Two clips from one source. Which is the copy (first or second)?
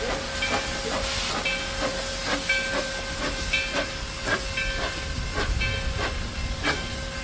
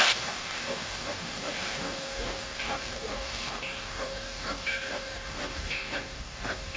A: second